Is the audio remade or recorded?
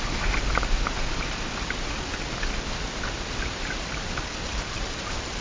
recorded